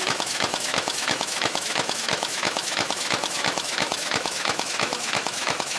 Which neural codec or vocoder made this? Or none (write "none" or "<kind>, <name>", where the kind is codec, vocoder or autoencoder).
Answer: autoencoder, DAC-VAE